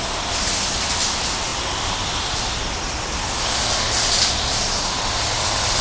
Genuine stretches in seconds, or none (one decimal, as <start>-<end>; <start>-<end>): 0.0-5.8